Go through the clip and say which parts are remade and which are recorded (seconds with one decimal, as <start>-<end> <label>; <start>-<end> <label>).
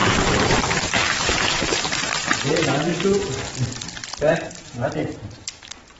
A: 0.0-2.9 remade; 2.9-4.3 recorded; 4.3-6.0 remade